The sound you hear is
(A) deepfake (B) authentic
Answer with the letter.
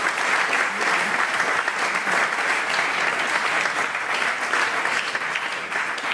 B